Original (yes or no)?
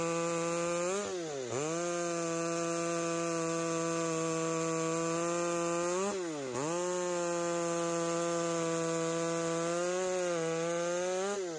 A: yes